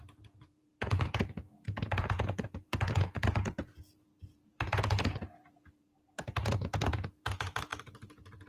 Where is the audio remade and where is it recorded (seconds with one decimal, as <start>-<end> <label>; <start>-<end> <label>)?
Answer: 0.0-7.7 remade; 7.7-8.5 recorded